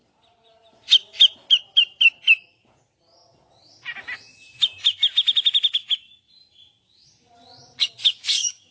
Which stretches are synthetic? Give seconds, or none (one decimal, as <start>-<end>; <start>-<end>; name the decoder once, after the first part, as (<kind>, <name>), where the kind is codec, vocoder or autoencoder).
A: 7.8-8.7 (codec, DAC)